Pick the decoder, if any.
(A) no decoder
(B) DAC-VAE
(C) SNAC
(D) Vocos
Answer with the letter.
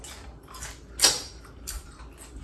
A